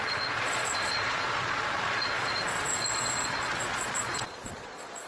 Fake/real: fake